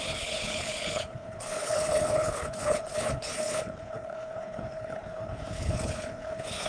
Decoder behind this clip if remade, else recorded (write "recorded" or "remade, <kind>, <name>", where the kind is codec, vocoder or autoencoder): remade, codec, HILCodec